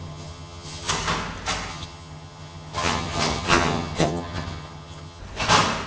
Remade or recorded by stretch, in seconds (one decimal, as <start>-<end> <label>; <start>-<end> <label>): 0.0-0.9 remade; 0.9-1.7 recorded; 1.7-5.2 remade; 5.2-5.9 recorded